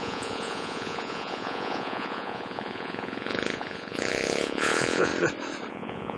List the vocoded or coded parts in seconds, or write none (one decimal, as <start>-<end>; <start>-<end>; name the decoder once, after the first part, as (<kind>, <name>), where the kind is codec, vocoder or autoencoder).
0.0-5.1 (vocoder, Vocos); 5.7-6.2